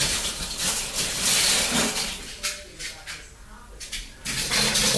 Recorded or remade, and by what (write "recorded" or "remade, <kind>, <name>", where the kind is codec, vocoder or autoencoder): recorded